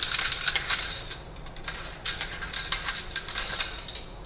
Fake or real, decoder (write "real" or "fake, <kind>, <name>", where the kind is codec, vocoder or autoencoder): real